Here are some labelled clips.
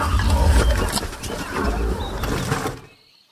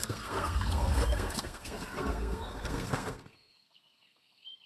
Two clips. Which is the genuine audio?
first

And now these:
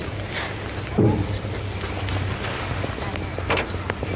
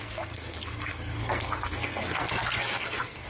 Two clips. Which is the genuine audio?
first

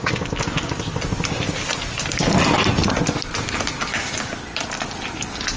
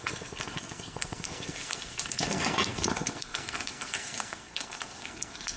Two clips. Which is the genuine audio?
first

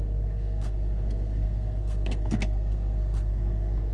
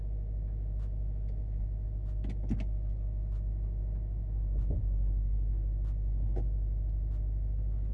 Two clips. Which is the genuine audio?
second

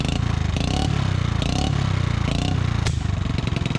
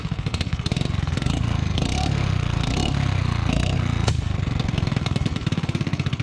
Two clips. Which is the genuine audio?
first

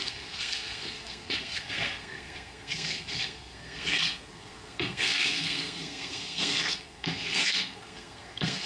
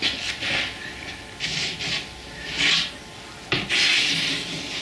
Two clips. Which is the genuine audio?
second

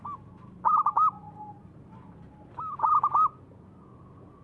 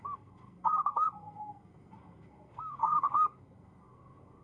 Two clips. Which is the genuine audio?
first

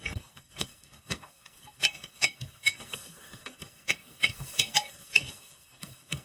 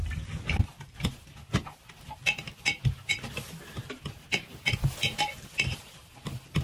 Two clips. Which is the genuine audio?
second